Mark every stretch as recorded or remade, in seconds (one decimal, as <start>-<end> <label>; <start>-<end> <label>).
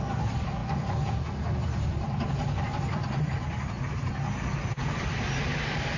0.0-0.6 recorded; 0.6-2.6 remade; 2.6-3.0 recorded; 3.0-4.1 remade; 4.1-6.0 recorded